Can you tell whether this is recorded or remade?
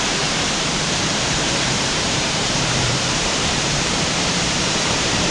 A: remade